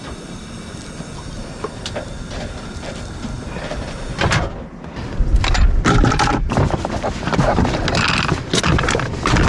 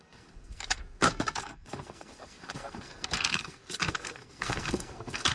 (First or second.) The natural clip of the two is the first